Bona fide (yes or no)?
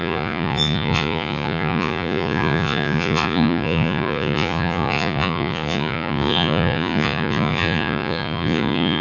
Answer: no